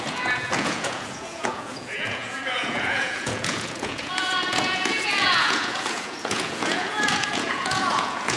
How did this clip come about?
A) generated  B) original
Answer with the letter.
A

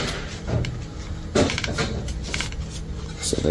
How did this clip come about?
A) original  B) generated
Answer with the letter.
A